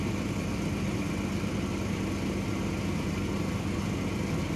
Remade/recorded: recorded